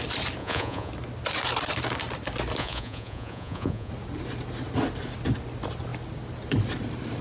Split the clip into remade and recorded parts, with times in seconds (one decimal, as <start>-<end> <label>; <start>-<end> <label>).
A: 0.0-0.4 recorded; 0.4-0.9 remade; 0.9-2.6 recorded; 2.6-3.9 remade; 3.9-7.2 recorded

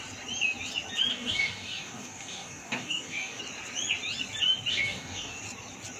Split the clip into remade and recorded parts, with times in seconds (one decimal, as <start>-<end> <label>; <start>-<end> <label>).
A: 0.0-1.1 recorded; 1.1-3.4 remade; 3.4-4.7 recorded; 4.7-5.4 remade; 5.4-6.0 recorded